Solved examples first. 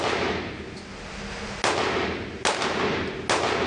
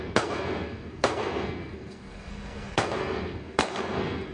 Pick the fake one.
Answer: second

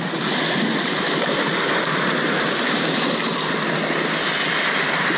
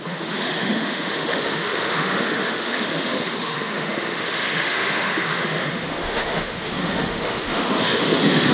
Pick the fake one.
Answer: second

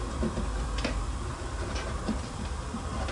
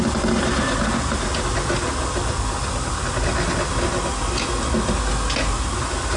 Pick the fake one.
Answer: first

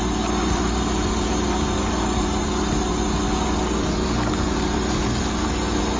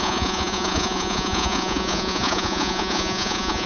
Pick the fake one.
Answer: second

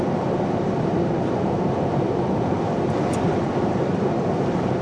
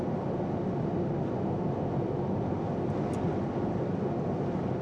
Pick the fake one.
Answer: first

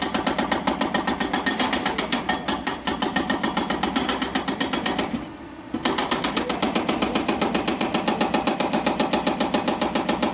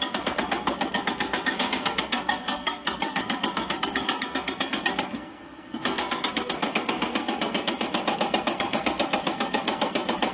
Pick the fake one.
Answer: second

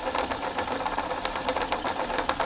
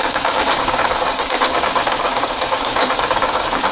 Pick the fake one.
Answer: second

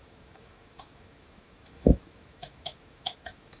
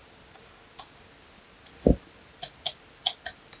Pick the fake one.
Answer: first